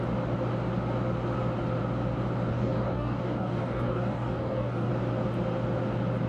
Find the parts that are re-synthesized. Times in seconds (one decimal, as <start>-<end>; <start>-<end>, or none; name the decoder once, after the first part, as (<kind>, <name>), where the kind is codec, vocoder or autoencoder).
2.5-4.9 (codec, DAC)